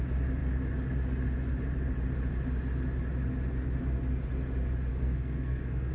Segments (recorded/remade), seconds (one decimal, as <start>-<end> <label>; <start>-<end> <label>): 0.0-4.9 recorded; 4.9-5.9 remade